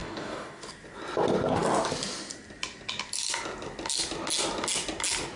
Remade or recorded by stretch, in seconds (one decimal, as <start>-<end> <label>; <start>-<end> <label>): 0.0-0.6 remade; 0.6-5.4 recorded